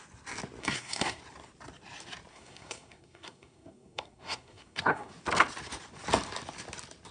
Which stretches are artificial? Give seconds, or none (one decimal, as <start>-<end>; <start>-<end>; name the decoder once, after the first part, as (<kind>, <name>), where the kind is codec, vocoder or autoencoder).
0.6-1.2 (codec, SNAC); 2.3-5.1